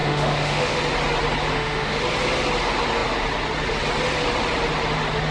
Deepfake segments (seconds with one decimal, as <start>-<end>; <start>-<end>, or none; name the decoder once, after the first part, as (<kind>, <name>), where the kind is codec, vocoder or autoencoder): 0.0-0.8 (autoencoder, DAC-VAE); 1.5-2.0